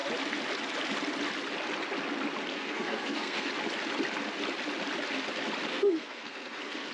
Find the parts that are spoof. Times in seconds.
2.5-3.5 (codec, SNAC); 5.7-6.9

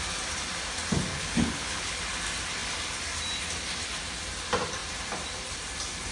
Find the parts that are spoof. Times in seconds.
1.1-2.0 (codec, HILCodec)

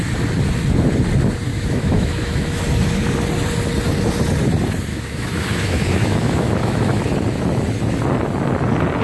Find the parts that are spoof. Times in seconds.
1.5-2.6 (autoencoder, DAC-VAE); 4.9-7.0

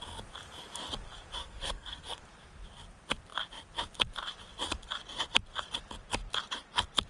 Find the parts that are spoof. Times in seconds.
1.4-2.2 (codec, SNAC)